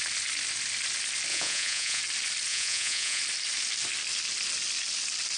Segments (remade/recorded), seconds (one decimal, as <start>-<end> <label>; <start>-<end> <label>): 0.0-1.3 recorded; 1.3-2.0 remade; 2.0-2.5 recorded; 2.5-3.2 remade; 3.2-5.4 recorded